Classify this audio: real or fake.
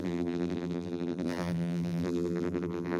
fake